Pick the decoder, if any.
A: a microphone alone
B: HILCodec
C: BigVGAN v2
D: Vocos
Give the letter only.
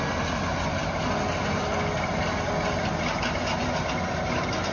A